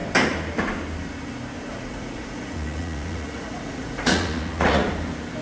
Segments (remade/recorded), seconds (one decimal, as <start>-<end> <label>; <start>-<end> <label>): 0.0-1.7 recorded; 1.7-4.9 remade; 4.9-5.4 recorded